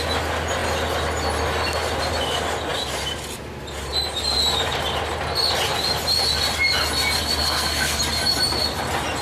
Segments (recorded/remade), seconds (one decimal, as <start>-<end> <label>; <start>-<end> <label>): 0.0-7.4 recorded; 7.4-8.0 remade; 8.0-9.2 recorded